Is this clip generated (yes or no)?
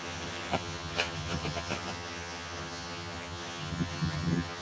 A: yes